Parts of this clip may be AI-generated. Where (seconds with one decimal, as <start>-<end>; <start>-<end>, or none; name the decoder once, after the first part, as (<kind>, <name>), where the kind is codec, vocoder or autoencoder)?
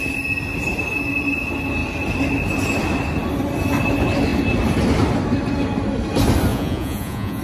6.5-7.4 (vocoder, Vocos)